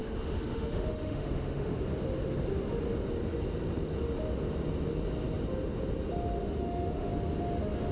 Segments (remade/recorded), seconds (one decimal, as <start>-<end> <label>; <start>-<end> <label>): 0.0-1.8 remade; 1.8-6.4 recorded; 6.4-7.1 remade; 7.1-7.9 recorded